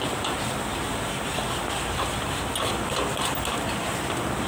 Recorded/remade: recorded